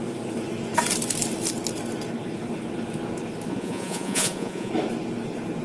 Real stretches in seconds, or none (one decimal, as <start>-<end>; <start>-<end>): 0.0-3.5; 4.7-5.6